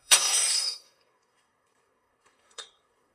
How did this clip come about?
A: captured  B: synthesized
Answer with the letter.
B